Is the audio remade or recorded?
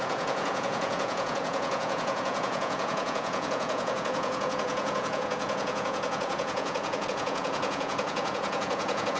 remade